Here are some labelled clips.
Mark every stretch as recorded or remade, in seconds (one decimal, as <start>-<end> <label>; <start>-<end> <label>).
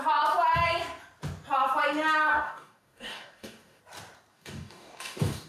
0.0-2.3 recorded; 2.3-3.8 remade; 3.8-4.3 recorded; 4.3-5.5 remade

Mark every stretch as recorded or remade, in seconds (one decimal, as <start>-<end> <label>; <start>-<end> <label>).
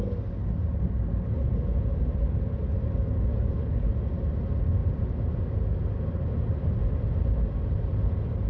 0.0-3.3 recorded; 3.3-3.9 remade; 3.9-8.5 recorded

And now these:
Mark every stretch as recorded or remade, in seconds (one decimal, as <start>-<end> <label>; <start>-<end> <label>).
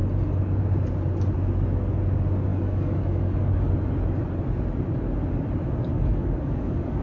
0.0-2.5 recorded; 2.5-3.7 remade; 3.7-5.9 recorded; 5.9-7.0 remade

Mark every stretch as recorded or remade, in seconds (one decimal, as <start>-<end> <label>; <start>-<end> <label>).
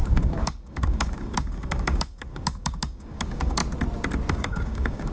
0.0-3.6 remade; 3.6-4.3 recorded; 4.3-5.1 remade